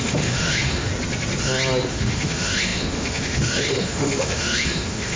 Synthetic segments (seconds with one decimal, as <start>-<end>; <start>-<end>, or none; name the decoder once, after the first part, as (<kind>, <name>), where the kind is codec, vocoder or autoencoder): 0.0-0.9 (autoencoder, DAC-VAE); 1.9-5.2